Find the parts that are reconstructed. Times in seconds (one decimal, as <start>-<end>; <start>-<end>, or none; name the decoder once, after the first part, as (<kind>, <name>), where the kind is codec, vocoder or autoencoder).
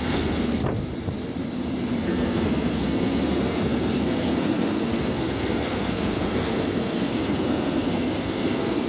0.0-0.6 (codec, SNAC); 2.0-8.9